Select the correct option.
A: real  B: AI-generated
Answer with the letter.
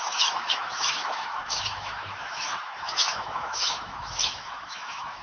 B